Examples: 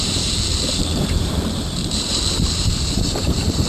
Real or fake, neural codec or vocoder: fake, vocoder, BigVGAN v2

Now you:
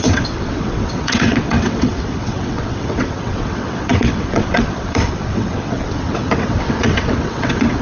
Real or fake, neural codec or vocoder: fake, vocoder, WaveNeXt